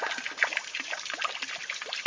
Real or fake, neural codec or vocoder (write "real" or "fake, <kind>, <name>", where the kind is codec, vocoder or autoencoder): fake, vocoder, BigVGAN v2